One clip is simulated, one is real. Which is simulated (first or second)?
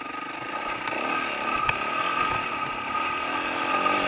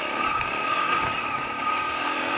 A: second